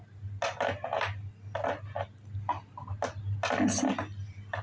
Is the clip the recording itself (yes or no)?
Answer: yes